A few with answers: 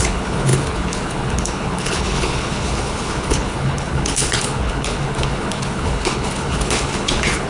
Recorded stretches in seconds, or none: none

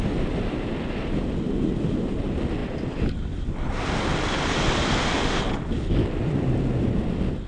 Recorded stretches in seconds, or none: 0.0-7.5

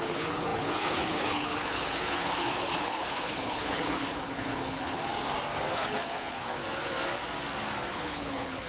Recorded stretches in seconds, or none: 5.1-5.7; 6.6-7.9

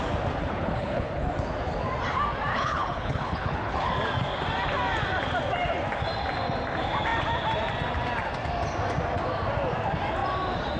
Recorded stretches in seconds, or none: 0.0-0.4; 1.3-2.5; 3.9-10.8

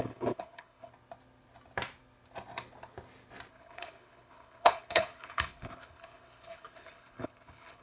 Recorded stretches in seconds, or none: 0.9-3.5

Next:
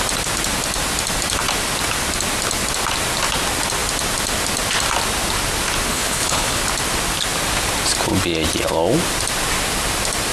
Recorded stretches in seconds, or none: 0.0-5.9; 6.6-10.3

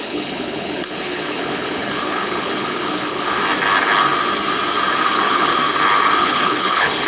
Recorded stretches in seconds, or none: 3.4-5.1; 5.6-6.2

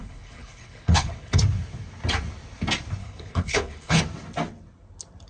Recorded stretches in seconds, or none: 1.4-3.0; 4.0-5.3